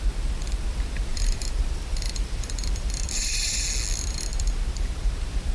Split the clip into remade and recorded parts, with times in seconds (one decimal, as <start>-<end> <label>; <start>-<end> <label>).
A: 0.0-1.1 recorded; 1.1-3.2 remade; 3.2-4.3 recorded; 4.3-5.5 remade